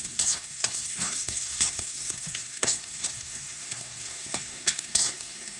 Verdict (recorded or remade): remade